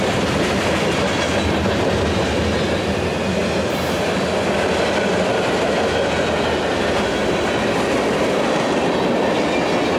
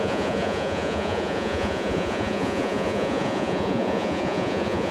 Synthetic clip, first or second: second